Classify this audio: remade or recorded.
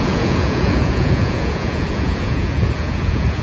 remade